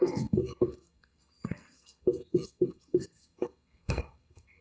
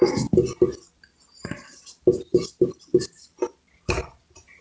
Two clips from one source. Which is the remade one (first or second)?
first